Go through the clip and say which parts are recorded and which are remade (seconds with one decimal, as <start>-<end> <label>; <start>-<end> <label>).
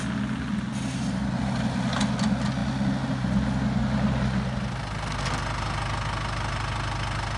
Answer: 0.0-7.4 recorded